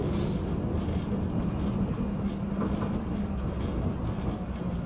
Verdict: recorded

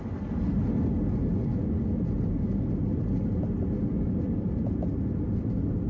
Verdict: recorded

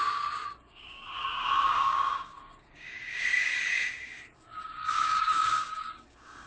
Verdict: remade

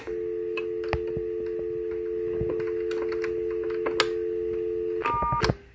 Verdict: recorded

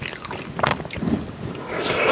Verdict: recorded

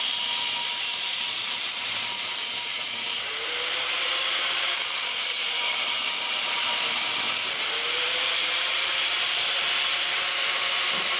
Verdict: remade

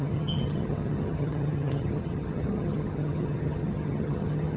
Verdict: remade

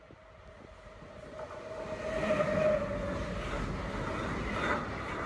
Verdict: recorded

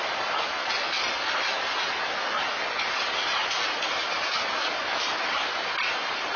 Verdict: recorded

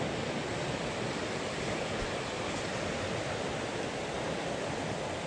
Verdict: recorded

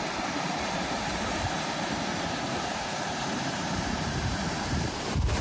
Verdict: remade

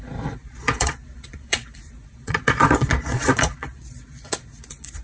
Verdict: remade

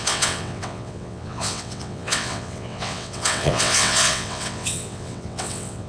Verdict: remade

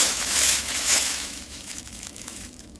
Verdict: remade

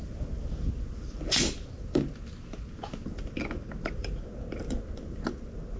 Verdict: recorded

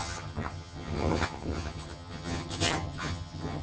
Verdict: remade